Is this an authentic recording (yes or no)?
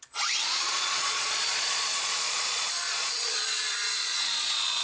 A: no